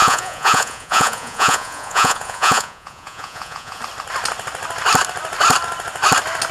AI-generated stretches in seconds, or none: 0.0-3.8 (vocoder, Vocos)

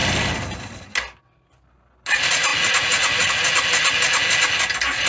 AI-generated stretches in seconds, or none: 2.5-3.3 (vocoder, Vocos)

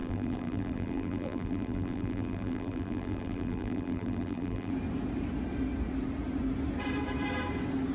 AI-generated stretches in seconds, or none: 0.0-4.7 (vocoder, BigVGAN v2)

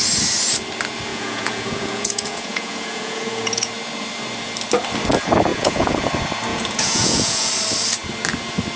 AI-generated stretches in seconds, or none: 1.1-3.7 (vocoder, Vocos); 5.5-6.0; 6.5-7.5

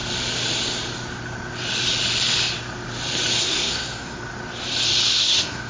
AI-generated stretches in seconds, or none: 3.4-4.2 (codec, SNAC); 5.2-5.7

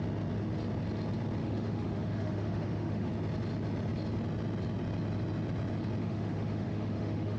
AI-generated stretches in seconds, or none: 1.4-3.1 (autoencoder, DAC-VAE); 6.0-7.4